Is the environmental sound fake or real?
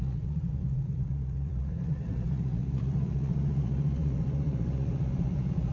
fake